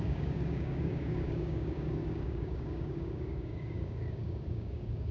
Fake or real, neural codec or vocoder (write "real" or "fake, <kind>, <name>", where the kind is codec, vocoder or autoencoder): fake, codec, DAC